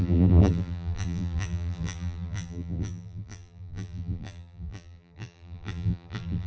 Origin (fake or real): fake